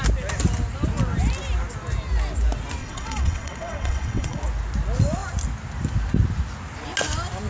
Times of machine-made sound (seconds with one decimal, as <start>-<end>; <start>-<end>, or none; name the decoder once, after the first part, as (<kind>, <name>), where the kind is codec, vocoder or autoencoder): 2.8-4.4 (vocoder, WaveNeXt)